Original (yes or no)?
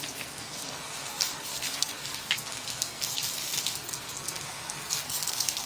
no